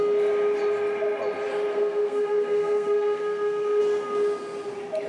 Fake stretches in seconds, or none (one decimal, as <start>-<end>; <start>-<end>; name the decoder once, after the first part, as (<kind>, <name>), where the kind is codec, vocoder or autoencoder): 1.7-3.8 (codec, SNAC)